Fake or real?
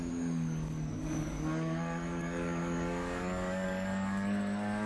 fake